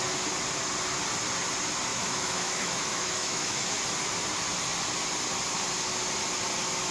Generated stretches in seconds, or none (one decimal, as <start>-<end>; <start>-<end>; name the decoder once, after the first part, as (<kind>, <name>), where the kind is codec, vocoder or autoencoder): 1.9-3.8 (autoencoder, DAC-VAE)